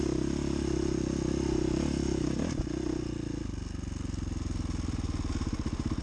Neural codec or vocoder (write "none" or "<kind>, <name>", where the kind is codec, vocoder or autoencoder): none